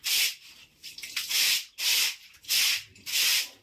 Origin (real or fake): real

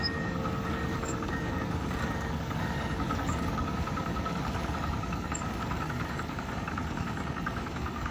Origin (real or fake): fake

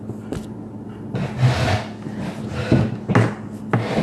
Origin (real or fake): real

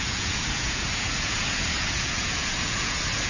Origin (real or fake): fake